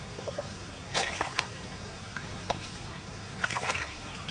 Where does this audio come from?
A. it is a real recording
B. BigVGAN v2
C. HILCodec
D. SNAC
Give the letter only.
D